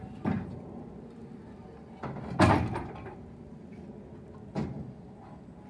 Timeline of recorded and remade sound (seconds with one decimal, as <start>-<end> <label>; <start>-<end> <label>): 0.0-5.7 recorded